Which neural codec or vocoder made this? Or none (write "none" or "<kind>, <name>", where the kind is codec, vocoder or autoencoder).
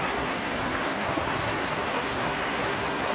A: codec, SNAC